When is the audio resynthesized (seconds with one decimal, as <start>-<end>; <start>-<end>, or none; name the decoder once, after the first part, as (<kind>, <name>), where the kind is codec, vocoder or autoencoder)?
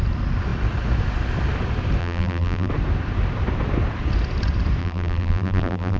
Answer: 2.0-2.7 (vocoder, BigVGAN v2); 4.8-6.0